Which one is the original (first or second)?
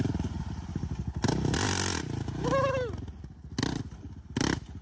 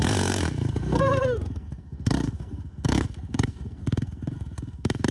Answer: first